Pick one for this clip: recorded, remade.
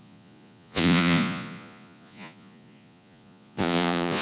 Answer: remade